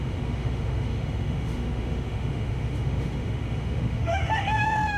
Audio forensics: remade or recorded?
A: remade